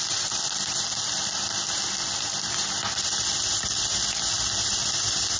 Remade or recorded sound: recorded